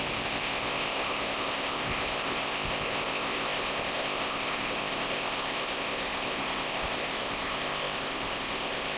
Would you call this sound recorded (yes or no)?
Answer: no